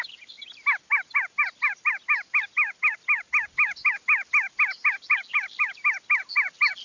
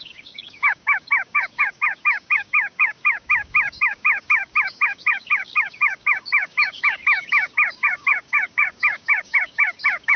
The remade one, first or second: second